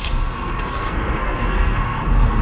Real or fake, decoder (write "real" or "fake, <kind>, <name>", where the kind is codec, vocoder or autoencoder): fake, codec, SNAC